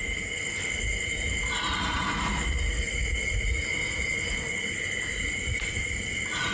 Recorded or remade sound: recorded